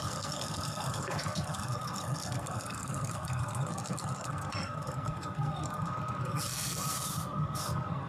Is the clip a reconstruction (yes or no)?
yes